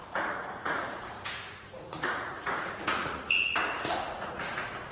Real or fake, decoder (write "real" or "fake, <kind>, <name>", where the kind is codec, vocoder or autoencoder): fake, vocoder, Vocos